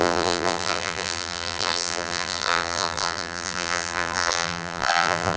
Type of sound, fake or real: fake